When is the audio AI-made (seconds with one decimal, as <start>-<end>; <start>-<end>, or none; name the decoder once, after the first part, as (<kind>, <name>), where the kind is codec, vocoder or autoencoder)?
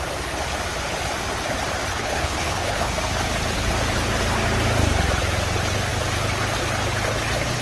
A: 1.9-2.9 (codec, HILCodec)